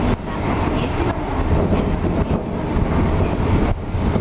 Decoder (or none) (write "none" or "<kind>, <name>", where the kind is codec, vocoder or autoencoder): none